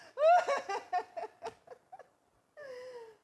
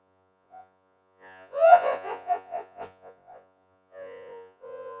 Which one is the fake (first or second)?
second